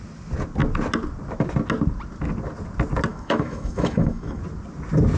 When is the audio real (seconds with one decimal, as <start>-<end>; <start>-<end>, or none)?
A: 0.0-3.1; 4.4-5.2

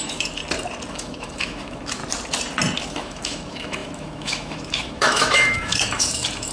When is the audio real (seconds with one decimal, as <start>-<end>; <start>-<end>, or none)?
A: 0.4-0.9; 2.0-2.8

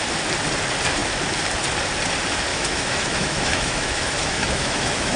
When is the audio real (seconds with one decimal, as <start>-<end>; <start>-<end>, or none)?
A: 0.0-2.5

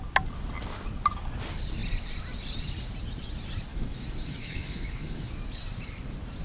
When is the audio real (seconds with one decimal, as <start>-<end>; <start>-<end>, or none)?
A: 0.0-3.7; 5.3-6.4

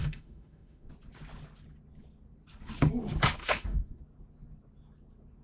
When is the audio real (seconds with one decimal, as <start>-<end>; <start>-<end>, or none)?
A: 0.9-3.4; 4.0-5.4

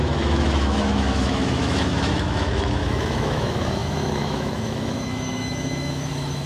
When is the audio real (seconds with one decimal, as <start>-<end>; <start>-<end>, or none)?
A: none

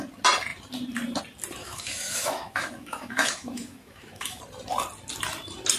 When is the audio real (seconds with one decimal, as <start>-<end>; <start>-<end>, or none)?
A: 0.0-1.6; 4.4-5.8